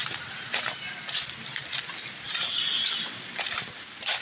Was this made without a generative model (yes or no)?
yes